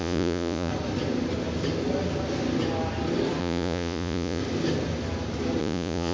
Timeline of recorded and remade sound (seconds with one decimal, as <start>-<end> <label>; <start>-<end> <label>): 0.0-0.7 remade; 0.7-3.4 recorded; 3.4-4.4 remade; 4.4-5.6 recorded; 5.6-6.1 remade